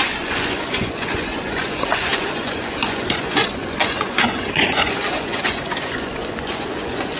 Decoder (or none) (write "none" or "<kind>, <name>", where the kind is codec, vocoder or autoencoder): vocoder, Vocos